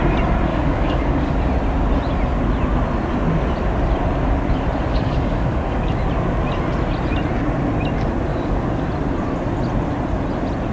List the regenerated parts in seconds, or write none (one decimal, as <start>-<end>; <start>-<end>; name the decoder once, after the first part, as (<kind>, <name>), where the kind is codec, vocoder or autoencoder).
0.5-1.3 (codec, DAC); 4.9-6.0; 8.3-8.8